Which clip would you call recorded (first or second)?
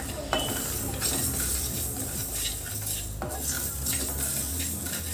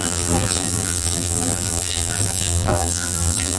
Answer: first